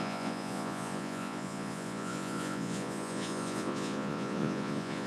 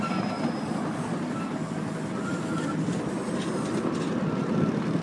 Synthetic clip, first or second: first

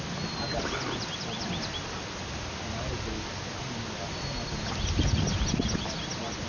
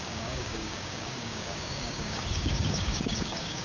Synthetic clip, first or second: second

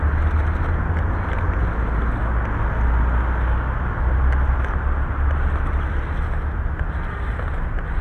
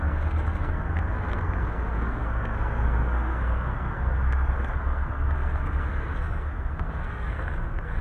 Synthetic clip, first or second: second